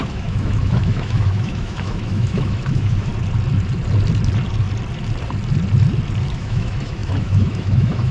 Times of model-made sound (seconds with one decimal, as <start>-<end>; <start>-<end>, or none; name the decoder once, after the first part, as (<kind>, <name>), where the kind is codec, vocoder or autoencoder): 0.0-3.1 (autoencoder, DAC-VAE); 6.3-8.1